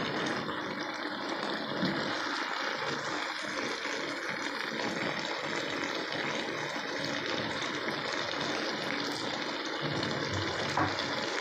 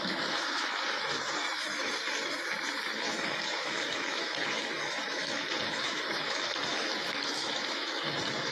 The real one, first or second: first